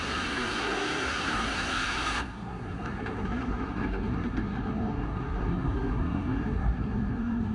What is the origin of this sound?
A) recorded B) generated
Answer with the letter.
B